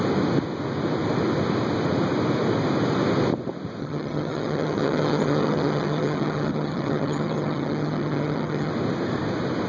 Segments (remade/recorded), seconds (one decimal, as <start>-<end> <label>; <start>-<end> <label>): 0.0-3.8 recorded; 3.8-8.7 remade; 8.7-9.7 recorded